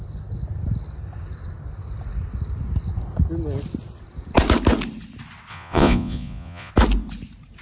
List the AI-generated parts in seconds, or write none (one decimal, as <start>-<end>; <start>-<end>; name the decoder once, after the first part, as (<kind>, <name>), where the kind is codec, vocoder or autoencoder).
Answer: 5.5-6.7 (vocoder, Vocos)